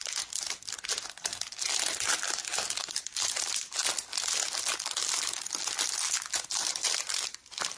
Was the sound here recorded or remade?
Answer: remade